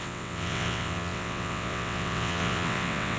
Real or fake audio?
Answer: fake